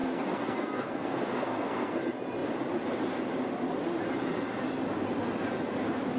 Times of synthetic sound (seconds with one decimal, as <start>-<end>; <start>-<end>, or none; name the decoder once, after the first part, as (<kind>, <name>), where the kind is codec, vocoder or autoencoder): 0.0-2.0 (codec, SNAC)